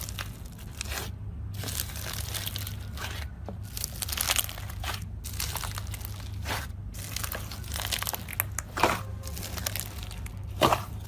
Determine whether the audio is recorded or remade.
recorded